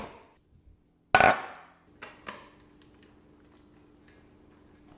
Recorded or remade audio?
recorded